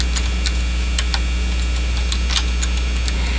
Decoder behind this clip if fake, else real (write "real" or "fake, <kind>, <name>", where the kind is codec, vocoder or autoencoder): real